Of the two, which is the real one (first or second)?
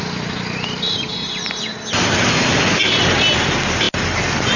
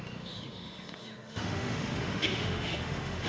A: first